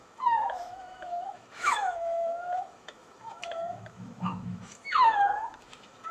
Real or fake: fake